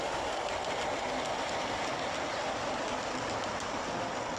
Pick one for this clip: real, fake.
real